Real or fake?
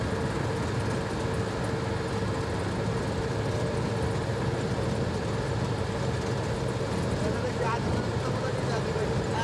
real